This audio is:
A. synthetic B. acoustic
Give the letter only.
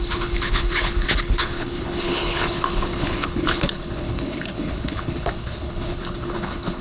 A